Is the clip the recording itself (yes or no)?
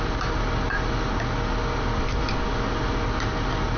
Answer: yes